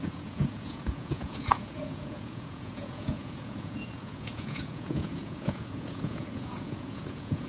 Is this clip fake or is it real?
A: fake